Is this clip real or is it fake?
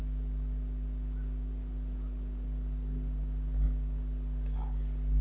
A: real